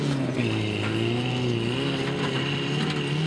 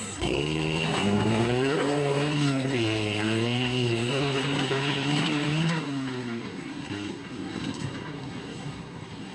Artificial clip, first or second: second